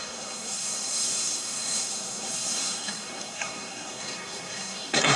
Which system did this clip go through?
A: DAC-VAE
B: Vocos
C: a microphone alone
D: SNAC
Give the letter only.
D